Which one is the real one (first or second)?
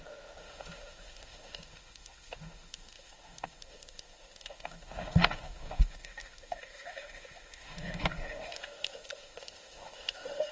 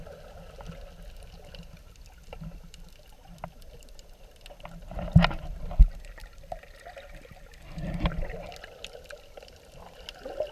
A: second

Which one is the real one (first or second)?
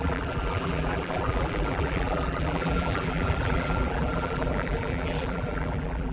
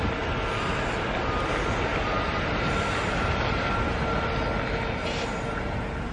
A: second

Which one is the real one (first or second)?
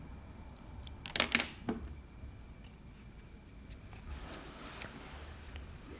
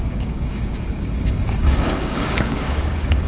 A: first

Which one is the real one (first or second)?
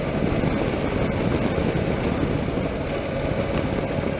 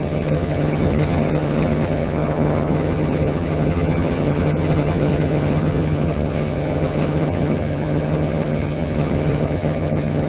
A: first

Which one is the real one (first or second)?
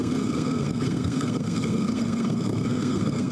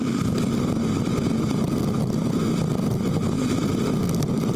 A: second